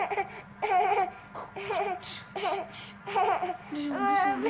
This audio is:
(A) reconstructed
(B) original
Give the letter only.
B